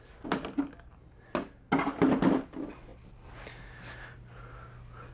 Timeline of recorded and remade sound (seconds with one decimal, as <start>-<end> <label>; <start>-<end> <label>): 0.0-5.1 recorded